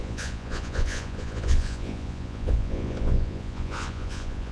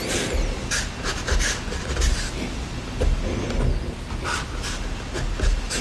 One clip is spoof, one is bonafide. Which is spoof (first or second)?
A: first